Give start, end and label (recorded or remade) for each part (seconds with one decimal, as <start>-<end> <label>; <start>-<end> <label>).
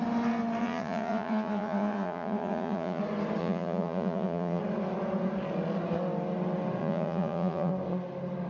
0.0-0.6 recorded; 0.6-3.0 remade; 3.0-3.4 recorded; 3.4-4.6 remade; 4.6-6.8 recorded; 6.8-7.7 remade; 7.7-8.5 recorded